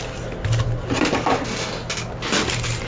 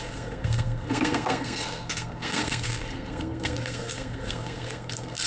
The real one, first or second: first